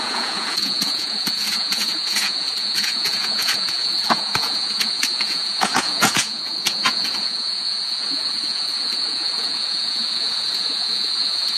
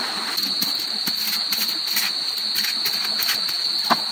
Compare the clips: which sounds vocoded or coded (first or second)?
first